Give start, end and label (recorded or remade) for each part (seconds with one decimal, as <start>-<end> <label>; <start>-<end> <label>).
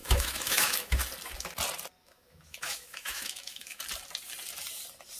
0.0-1.0 remade; 1.0-2.0 recorded; 2.0-3.8 remade; 3.8-5.2 recorded